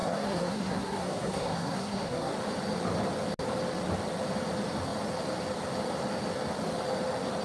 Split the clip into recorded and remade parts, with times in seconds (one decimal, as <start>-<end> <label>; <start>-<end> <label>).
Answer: 0.0-2.3 remade; 2.3-7.4 recorded